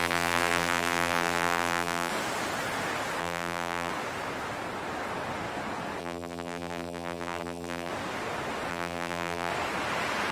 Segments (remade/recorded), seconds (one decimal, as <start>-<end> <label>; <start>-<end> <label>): 0.0-2.1 remade; 2.1-3.2 recorded; 3.2-3.9 remade; 3.9-6.0 recorded; 6.0-7.9 remade; 7.9-8.7 recorded; 8.7-9.5 remade; 9.5-10.3 recorded